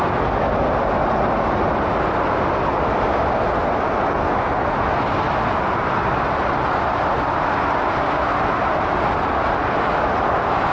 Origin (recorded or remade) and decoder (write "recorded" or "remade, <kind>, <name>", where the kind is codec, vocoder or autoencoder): recorded